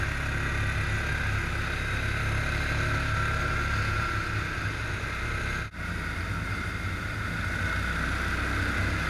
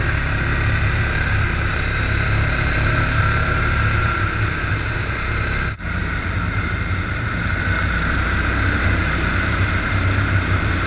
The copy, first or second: second